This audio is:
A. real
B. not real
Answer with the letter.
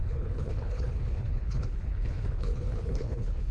B